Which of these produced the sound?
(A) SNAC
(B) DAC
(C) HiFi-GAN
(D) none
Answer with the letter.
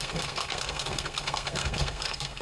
A